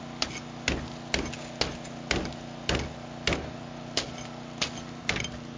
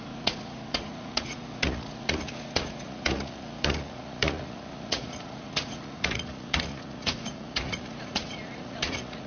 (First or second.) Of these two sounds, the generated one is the second